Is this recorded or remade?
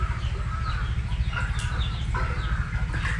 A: recorded